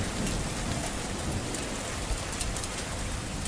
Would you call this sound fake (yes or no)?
no